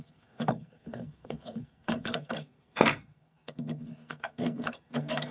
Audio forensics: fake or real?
fake